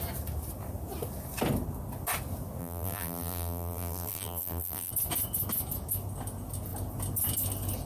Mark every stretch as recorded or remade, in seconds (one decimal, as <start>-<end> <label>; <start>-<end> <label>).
0.0-2.6 recorded; 2.6-4.9 remade; 4.9-7.9 recorded